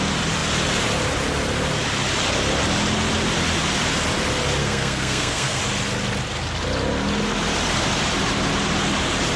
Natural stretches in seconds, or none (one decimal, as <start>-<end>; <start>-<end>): 0.0-4.6; 5.6-9.4